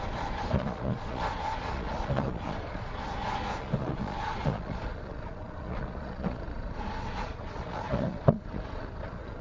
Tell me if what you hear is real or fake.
fake